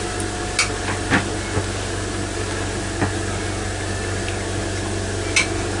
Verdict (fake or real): real